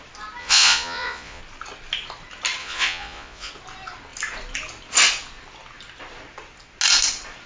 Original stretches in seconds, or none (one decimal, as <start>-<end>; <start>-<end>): 0.0-0.4; 1.4-2.6; 3.5-7.5